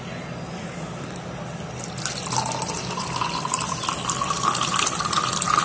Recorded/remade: recorded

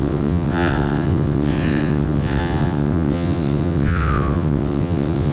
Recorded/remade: remade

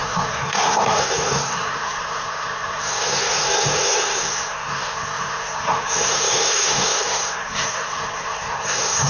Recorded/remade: remade